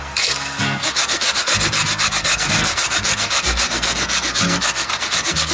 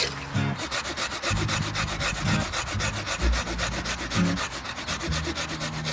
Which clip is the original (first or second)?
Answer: second